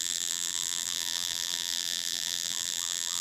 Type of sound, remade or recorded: remade